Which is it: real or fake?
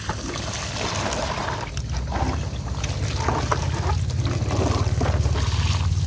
real